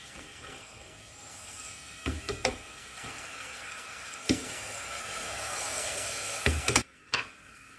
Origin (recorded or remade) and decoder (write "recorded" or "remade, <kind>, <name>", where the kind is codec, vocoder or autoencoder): remade, codec, SNAC